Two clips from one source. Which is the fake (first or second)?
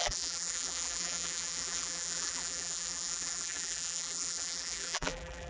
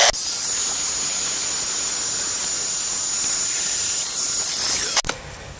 first